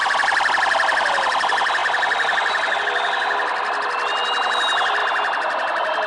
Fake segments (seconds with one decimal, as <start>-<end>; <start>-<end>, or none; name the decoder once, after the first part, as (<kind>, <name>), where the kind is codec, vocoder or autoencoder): none